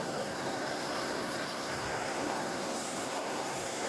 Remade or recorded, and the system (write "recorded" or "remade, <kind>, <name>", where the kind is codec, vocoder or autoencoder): remade, codec, SNAC